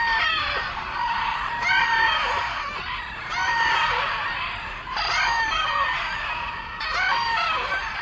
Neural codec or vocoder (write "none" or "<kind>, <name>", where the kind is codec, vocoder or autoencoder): none